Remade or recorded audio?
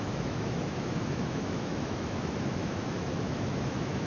remade